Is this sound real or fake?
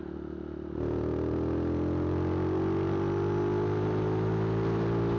real